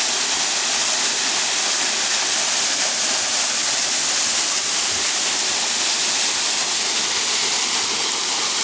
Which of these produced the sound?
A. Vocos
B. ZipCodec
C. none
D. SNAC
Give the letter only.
C